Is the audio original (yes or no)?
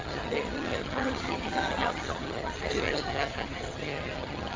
no